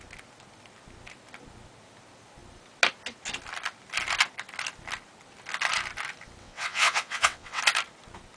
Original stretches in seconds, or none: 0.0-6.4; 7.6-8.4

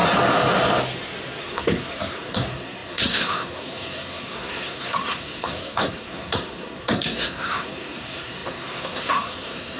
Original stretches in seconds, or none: 0.0-1.4

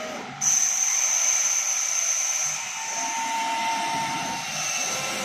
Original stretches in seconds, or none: 0.0-5.2

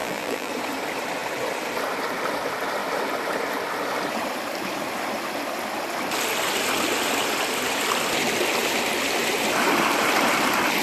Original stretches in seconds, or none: 0.5-10.8